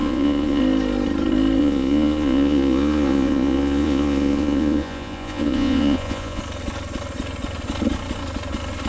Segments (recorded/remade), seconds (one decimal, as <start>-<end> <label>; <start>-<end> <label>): 0.0-0.6 remade; 0.6-1.6 recorded; 1.6-6.4 remade; 6.4-8.9 recorded